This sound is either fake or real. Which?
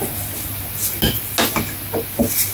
real